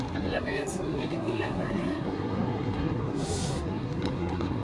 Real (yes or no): no